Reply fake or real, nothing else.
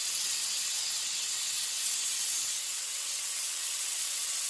fake